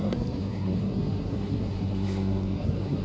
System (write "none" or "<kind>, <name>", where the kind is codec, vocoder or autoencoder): codec, SNAC